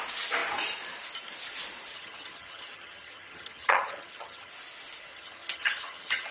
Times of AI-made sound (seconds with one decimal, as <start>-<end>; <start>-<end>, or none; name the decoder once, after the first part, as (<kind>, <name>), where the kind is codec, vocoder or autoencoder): 1.9-4.5 (vocoder, HiFi-GAN); 5.1-6.3